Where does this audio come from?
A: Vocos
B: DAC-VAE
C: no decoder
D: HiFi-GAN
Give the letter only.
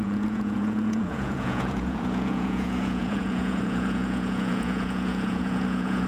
A